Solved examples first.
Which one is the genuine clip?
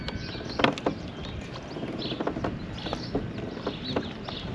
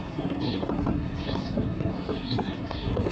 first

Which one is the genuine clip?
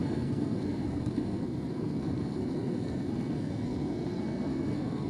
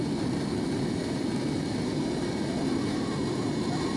second